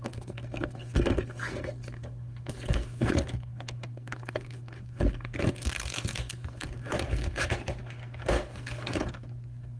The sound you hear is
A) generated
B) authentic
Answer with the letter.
A